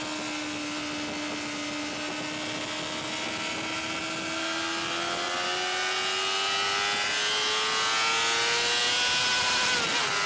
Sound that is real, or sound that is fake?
real